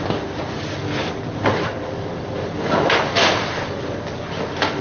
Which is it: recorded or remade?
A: recorded